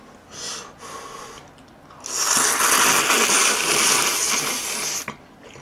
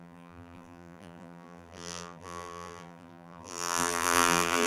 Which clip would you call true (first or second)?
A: first